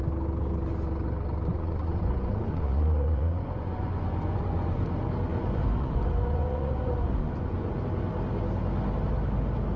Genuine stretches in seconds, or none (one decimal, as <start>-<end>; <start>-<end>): 0.0-1.5; 4.8-5.3; 7.8-9.8